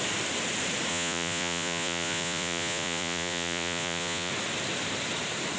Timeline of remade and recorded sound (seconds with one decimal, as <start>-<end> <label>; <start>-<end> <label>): 0.0-0.9 recorded; 0.9-4.3 remade; 4.3-5.6 recorded